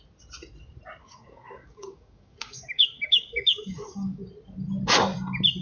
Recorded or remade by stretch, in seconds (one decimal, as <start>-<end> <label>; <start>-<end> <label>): 0.0-1.0 recorded; 1.0-4.2 remade; 4.2-5.6 recorded